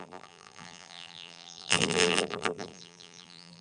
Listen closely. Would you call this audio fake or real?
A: fake